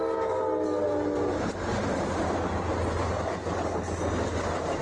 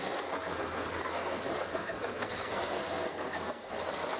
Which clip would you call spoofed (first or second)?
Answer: second